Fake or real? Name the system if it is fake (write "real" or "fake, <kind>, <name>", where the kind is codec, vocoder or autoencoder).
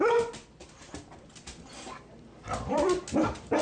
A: real